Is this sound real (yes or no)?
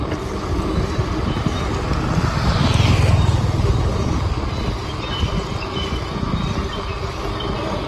yes